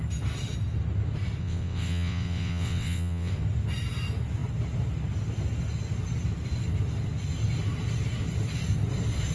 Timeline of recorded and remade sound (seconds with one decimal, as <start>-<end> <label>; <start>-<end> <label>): 0.0-1.4 recorded; 1.4-3.3 remade; 3.3-9.3 recorded